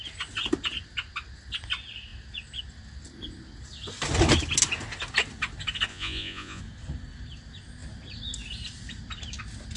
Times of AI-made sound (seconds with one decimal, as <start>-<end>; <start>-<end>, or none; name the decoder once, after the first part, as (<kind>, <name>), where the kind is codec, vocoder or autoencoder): 5.9-6.6 (vocoder, Vocos)